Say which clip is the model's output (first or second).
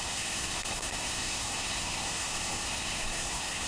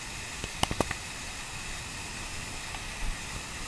first